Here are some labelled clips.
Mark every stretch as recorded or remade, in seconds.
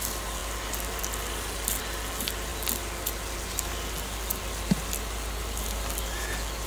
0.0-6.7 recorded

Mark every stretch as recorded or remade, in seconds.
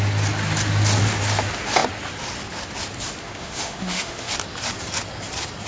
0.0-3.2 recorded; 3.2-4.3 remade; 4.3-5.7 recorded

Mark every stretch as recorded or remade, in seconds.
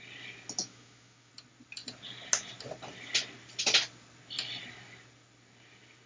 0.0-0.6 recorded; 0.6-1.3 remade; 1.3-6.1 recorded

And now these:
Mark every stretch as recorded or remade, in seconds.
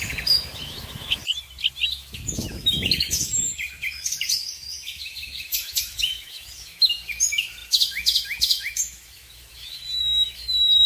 0.0-1.2 remade; 1.2-1.9 recorded; 1.9-10.9 remade